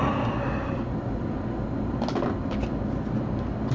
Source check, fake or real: real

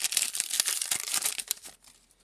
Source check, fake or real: real